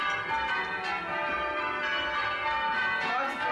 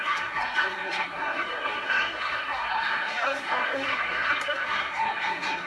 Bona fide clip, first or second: first